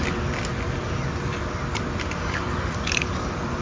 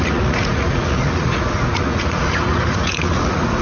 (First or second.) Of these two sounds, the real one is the first